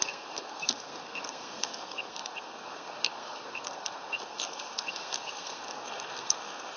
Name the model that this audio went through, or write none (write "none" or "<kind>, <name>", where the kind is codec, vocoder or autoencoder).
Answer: codec, SNAC